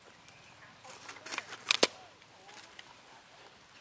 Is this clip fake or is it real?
real